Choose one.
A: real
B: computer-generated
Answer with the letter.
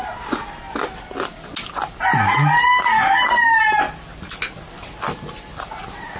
A